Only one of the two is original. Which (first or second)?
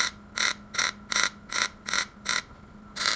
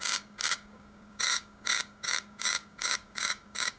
first